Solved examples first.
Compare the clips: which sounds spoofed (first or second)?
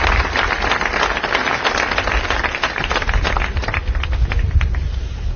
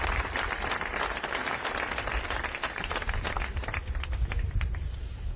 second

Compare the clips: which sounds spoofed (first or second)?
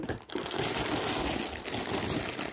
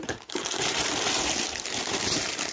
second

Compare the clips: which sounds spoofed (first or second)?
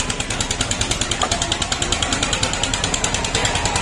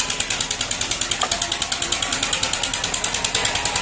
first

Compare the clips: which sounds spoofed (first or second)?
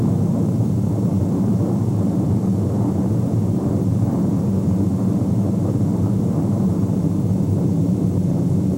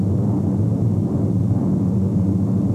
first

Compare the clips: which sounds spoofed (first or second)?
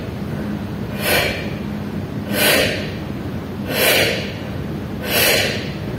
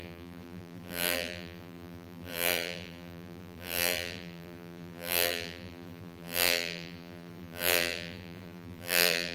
second